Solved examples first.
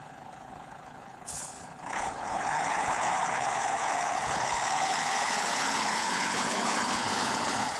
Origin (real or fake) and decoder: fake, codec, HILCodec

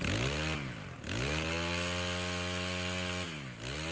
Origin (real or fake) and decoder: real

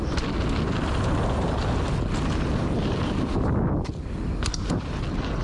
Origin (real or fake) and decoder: real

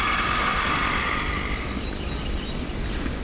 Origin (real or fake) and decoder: real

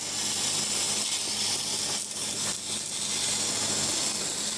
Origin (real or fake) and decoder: real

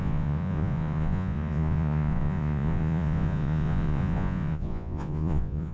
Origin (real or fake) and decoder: fake, vocoder, Vocos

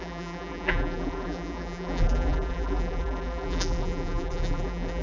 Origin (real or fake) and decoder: fake, vocoder, BigVGAN v2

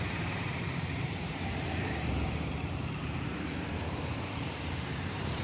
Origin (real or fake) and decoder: fake, vocoder, BigVGAN v2